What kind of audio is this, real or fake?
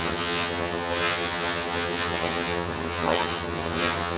fake